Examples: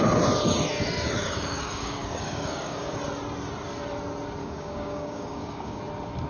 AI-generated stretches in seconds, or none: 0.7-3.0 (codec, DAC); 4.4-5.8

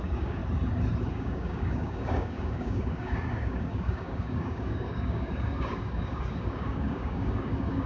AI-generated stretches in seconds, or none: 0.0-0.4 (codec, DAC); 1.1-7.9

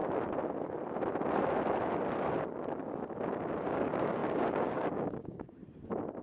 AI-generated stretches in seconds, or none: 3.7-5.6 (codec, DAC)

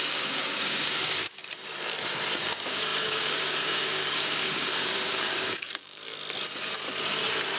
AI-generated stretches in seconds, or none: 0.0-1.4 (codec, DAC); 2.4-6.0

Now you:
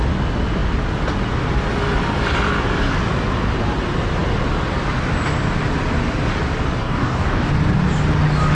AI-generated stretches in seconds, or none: 6.8-7.5 (codec, DAC)